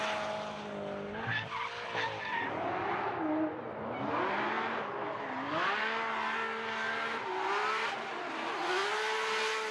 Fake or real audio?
real